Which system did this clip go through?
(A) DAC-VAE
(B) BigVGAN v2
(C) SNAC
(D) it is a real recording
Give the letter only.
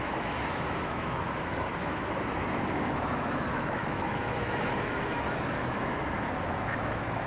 A